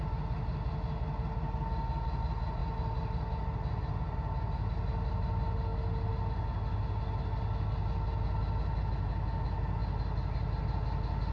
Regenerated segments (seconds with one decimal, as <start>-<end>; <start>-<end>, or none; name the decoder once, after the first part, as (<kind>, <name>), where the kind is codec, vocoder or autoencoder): none

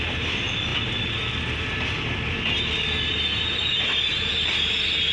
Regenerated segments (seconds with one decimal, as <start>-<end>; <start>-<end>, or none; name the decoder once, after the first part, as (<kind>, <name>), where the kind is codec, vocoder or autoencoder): none

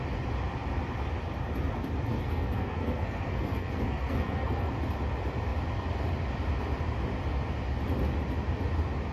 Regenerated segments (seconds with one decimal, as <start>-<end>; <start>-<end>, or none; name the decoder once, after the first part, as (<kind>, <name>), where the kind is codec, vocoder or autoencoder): 2.1-4.7 (codec, SNAC)

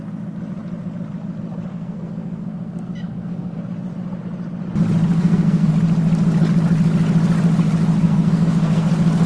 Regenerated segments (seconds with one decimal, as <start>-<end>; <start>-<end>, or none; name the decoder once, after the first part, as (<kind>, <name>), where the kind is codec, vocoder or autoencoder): 1.7-3.6 (codec, SNAC); 5.1-5.7; 8.0-8.9

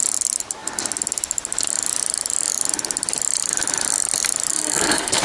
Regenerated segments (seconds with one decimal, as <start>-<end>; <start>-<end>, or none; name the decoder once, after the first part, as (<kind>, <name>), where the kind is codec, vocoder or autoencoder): 4.5-5.2 (codec, SNAC)